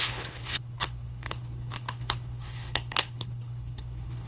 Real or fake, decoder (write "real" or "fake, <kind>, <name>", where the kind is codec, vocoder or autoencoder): fake, codec, HILCodec